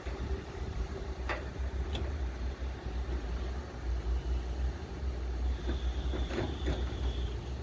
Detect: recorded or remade remade